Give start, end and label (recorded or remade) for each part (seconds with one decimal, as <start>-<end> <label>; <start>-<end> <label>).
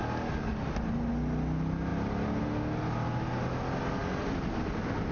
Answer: 0.0-5.1 recorded